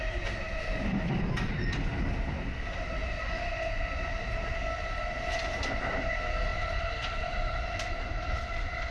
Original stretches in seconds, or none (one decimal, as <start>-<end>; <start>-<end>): 0.0-6.5; 8.3-8.9